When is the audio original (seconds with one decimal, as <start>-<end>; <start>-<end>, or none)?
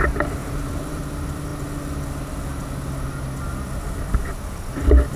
0.0-0.4; 1.0-5.2